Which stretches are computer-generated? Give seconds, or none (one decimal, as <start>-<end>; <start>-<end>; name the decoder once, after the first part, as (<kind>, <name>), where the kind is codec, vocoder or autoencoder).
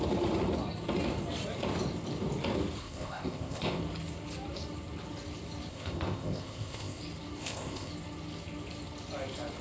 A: 2.8-3.8 (codec, ZipCodec); 5.7-7.0; 7.4-7.9